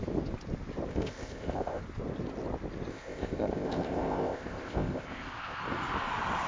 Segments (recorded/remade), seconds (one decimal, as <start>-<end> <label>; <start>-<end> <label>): 0.0-0.9 recorded; 0.9-1.8 remade; 1.8-2.9 recorded; 2.9-5.6 remade; 5.6-6.5 recorded